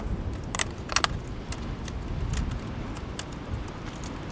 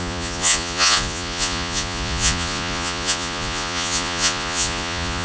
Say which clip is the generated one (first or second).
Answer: second